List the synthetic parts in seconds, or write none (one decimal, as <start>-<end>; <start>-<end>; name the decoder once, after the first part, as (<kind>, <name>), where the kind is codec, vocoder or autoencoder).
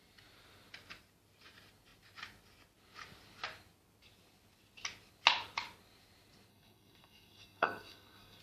6.5-8.4 (codec, SNAC)